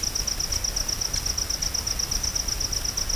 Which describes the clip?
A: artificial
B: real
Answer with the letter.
B